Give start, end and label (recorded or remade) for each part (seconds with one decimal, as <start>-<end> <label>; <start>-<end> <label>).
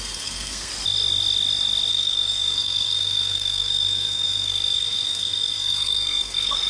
0.0-0.7 remade; 0.7-1.9 recorded; 1.9-6.7 remade